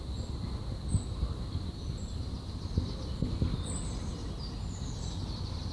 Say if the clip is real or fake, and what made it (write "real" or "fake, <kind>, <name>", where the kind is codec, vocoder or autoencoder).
real